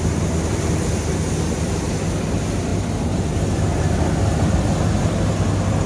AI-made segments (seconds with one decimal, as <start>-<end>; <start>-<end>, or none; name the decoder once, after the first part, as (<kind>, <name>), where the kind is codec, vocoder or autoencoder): none